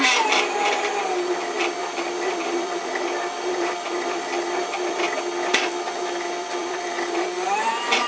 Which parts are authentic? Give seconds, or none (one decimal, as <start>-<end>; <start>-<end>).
0.0-1.8; 5.0-6.6